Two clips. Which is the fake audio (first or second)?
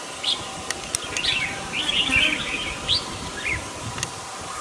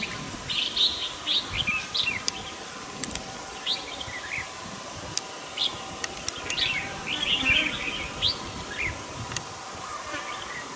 first